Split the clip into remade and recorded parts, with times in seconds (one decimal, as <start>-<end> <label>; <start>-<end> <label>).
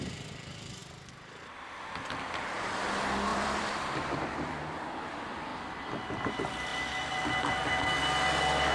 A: 0.0-3.3 recorded; 3.3-4.9 remade; 4.9-8.7 recorded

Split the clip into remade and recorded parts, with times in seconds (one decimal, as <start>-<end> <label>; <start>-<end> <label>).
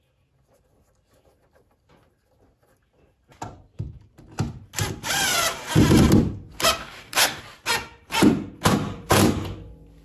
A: 0.0-6.8 recorded; 6.8-7.4 remade; 7.4-10.0 recorded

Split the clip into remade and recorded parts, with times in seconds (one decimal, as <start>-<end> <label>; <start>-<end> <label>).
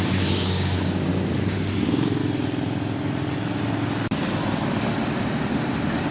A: 0.0-1.1 remade; 1.1-1.8 recorded; 1.8-2.2 remade; 2.2-6.1 recorded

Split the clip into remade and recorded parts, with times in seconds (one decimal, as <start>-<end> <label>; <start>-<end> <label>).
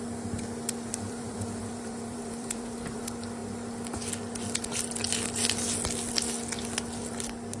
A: 0.0-0.9 recorded; 0.9-3.0 remade; 3.0-7.6 recorded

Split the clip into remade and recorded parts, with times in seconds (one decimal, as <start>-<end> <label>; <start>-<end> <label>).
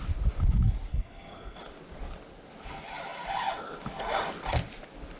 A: 0.0-0.9 recorded; 0.9-1.6 remade; 1.6-5.2 recorded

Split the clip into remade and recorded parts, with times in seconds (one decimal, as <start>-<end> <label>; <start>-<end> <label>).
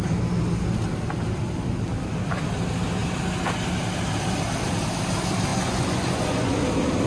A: 0.0-5.5 recorded; 5.5-6.6 remade; 6.6-7.1 recorded